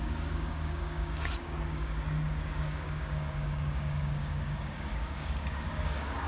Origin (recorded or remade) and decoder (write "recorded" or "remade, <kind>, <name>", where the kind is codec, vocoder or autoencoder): remade, codec, DAC